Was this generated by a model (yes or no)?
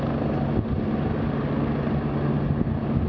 no